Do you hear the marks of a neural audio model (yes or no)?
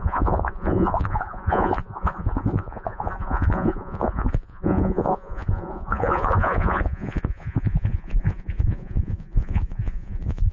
yes